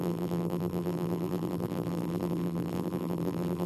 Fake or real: fake